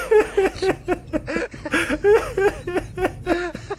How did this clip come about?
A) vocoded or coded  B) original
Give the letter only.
B